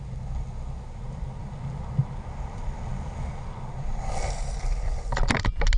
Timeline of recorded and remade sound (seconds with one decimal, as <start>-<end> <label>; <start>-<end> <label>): 0.0-5.8 recorded